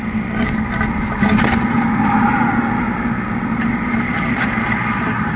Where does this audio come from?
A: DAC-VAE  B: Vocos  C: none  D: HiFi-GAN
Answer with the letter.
C